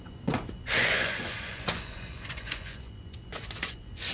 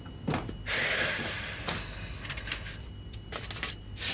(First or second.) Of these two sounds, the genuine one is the second